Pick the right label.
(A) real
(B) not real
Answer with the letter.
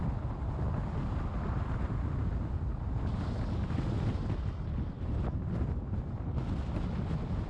A